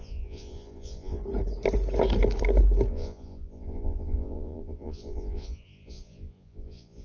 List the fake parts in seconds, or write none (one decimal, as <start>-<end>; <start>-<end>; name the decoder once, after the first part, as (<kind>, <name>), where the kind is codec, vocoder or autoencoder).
0.0-1.2 (vocoder, Vocos); 2.9-7.0